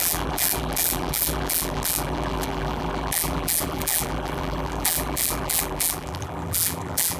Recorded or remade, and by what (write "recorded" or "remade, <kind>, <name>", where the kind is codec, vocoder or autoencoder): remade, vocoder, BigVGAN v2